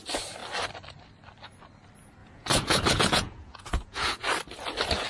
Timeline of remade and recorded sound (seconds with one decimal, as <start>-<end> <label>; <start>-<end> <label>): 0.0-2.2 recorded; 2.2-4.3 remade; 4.3-5.1 recorded

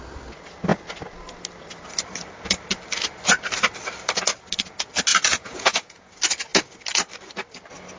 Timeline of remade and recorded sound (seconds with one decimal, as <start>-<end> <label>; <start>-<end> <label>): 0.0-5.1 recorded; 5.1-6.1 remade; 6.1-8.0 recorded

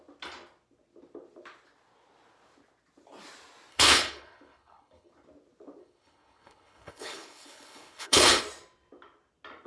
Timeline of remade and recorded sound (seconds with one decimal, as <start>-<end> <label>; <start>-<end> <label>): 0.0-3.7 recorded; 3.7-5.1 remade; 5.1-5.8 recorded; 5.8-8.4 remade; 8.4-9.7 recorded

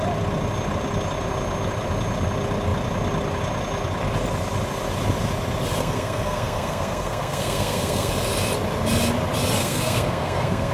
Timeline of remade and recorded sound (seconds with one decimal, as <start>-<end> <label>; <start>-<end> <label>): 0.0-5.8 recorded; 5.8-8.1 remade; 8.1-9.6 recorded; 9.6-10.7 remade